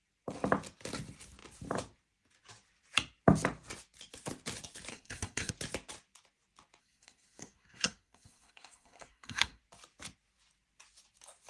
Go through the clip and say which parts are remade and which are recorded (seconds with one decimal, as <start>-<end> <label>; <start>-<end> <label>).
0.0-4.9 recorded; 4.9-5.5 remade; 5.5-6.8 recorded; 6.8-9.6 remade; 9.6-11.5 recorded